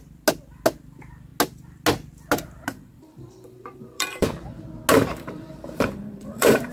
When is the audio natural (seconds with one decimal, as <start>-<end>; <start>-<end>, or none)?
0.0-2.7; 4.3-4.9